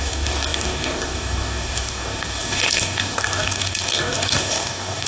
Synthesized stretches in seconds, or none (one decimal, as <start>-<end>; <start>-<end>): 0.0-5.1